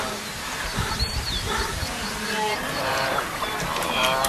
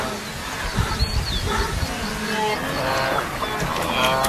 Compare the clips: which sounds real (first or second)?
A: second